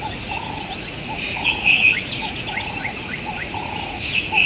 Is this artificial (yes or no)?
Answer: yes